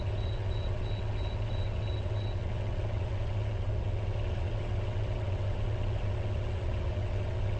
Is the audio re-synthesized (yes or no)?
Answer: yes